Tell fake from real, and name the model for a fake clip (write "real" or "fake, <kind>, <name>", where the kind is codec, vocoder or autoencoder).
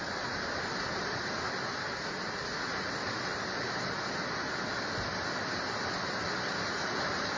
real